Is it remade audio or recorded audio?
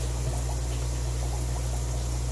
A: recorded